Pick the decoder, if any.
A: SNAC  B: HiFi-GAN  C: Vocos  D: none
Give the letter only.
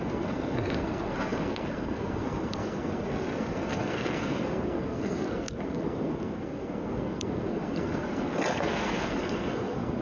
A